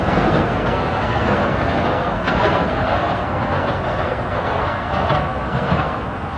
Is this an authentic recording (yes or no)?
no